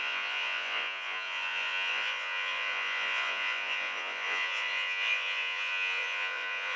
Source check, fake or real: fake